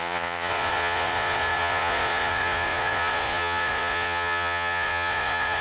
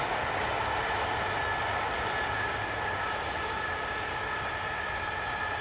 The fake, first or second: first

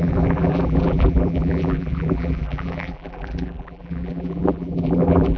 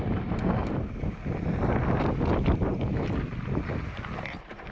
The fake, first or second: first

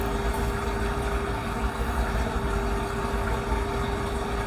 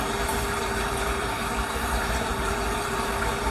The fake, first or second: second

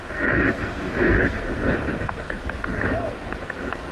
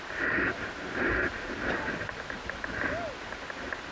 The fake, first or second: first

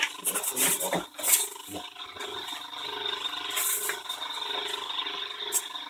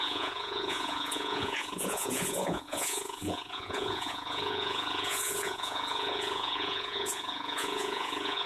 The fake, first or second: second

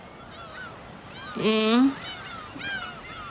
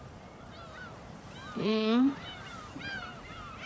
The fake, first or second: second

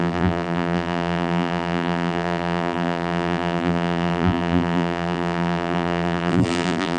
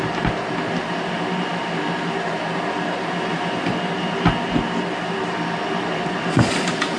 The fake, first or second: first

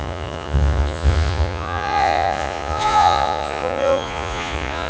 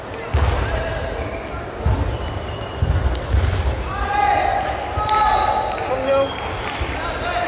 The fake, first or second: first